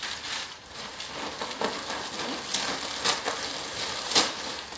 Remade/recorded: recorded